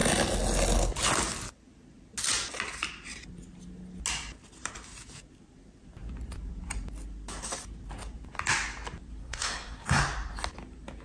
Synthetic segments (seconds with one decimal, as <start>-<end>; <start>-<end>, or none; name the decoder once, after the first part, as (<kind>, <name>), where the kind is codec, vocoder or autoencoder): 9.2-10.0 (codec, SNAC)